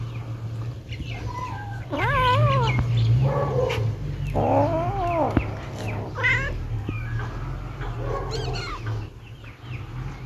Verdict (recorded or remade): recorded